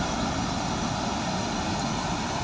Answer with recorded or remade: recorded